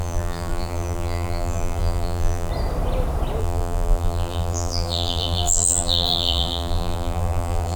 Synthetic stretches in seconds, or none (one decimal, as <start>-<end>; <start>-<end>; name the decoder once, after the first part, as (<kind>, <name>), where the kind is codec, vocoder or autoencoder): 0.0-2.5 (vocoder, BigVGAN v2); 3.4-7.8